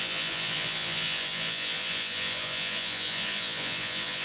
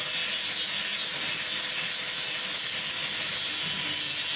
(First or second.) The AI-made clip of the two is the first